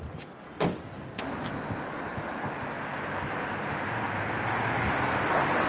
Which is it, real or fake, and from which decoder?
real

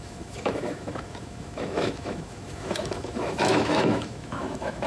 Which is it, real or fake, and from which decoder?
fake, autoencoder, DAC-VAE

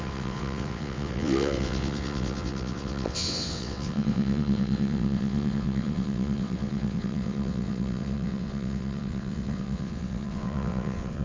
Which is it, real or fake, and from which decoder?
fake, vocoder, WaveNeXt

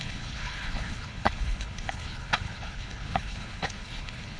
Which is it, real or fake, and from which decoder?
fake, codec, HILCodec